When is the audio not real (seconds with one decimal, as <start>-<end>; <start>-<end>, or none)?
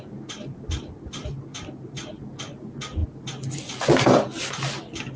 none